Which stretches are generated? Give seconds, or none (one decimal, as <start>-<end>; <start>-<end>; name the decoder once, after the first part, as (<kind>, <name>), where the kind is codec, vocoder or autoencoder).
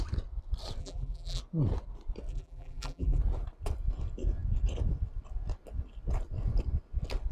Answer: 0.8-1.4 (vocoder, BigVGAN v2); 2.3-3.2